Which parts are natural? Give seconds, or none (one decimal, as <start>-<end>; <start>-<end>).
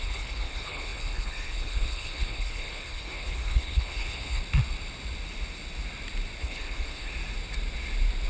4.4-6.4; 7.1-8.3